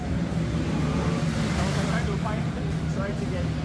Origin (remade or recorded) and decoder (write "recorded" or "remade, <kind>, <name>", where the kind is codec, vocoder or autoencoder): recorded